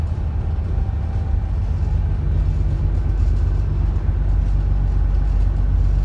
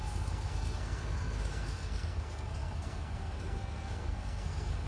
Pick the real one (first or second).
first